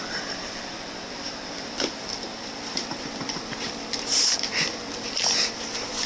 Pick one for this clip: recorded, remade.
remade